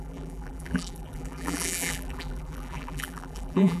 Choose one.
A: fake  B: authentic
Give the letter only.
A